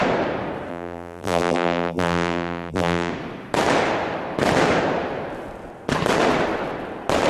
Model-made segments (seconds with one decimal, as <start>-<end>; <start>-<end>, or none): 0.7-3.1